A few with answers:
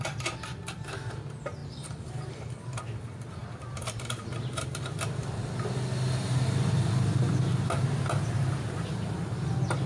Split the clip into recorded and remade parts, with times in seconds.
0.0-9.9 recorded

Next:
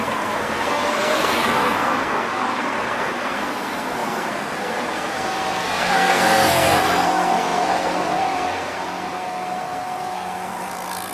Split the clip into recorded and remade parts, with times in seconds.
0.0-11.1 remade

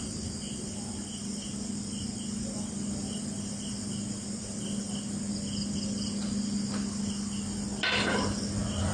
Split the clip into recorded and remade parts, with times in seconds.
0.0-8.9 recorded

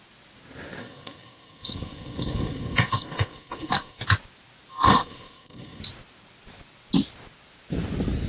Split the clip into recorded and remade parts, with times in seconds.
0.0-0.8 recorded; 0.8-4.0 remade; 4.0-4.7 recorded; 4.7-5.8 remade; 5.8-8.3 recorded

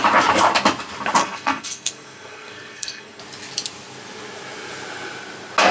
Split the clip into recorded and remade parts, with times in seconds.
0.0-1.2 recorded; 1.2-3.2 remade; 3.2-5.7 recorded